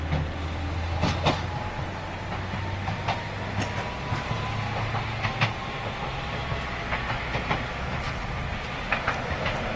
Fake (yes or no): no